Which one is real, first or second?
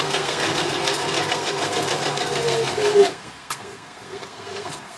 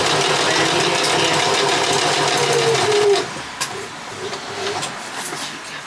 second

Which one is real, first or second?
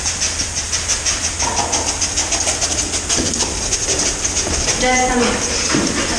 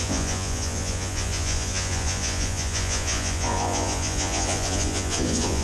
first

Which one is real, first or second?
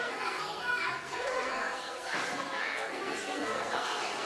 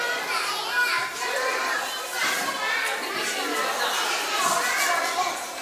second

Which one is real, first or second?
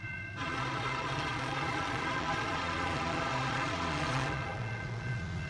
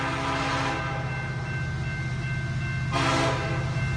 second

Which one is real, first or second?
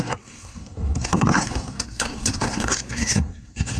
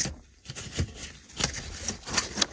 second